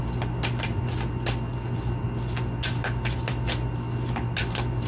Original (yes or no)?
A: yes